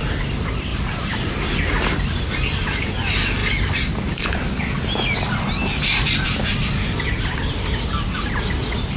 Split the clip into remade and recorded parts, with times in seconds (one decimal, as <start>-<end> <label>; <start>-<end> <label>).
0.0-0.7 recorded; 0.7-1.3 remade; 1.3-9.0 recorded